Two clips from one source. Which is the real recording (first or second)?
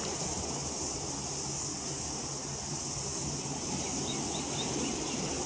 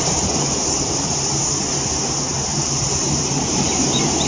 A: first